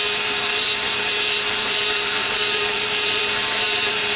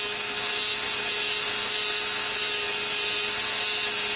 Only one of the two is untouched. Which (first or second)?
second